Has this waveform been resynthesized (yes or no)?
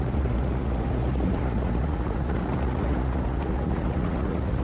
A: yes